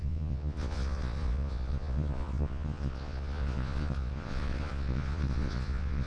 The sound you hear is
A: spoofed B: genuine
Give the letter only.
A